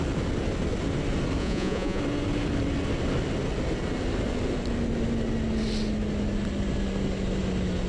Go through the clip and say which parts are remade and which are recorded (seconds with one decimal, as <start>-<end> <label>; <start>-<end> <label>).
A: 0.0-1.4 recorded; 1.4-2.0 remade; 2.0-7.9 recorded